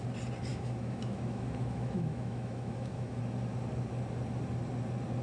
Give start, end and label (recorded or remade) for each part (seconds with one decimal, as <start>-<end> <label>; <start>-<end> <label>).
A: 0.0-0.5 recorded; 0.5-3.2 remade; 3.2-5.2 recorded